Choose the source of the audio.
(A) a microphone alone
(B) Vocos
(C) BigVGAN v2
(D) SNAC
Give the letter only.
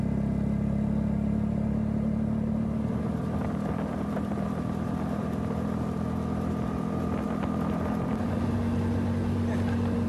A